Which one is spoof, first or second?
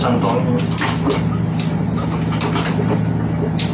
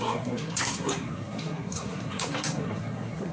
second